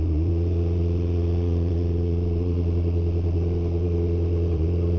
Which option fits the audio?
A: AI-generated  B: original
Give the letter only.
A